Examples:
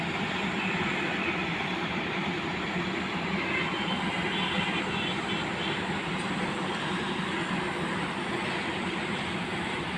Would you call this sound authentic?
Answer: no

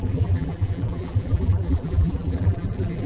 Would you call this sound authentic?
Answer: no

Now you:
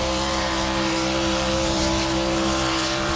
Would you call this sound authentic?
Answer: no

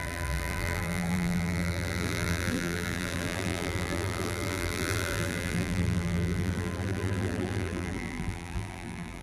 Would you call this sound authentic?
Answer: no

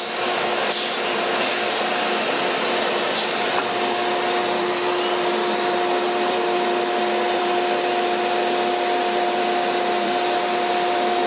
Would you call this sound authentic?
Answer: no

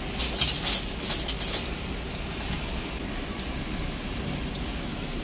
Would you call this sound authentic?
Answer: yes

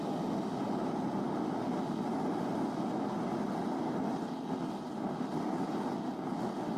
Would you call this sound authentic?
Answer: yes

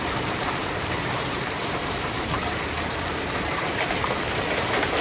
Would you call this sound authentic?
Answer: no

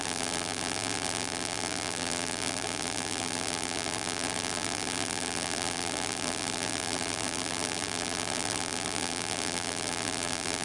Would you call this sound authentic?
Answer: no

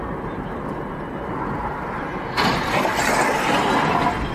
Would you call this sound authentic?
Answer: yes